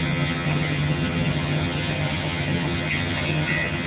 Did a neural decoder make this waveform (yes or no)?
yes